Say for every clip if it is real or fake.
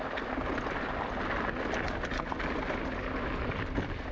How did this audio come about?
real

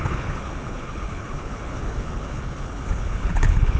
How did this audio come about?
fake